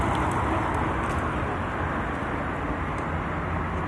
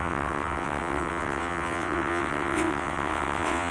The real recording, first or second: first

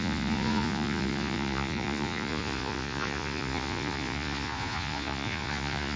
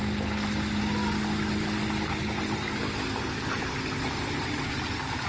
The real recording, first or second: second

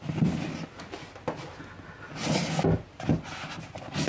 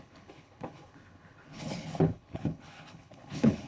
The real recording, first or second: first